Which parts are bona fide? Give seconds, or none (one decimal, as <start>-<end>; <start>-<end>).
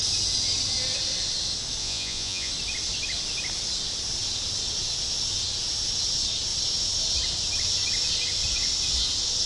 0.0-1.8; 2.5-9.5